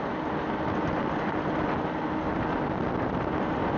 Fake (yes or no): no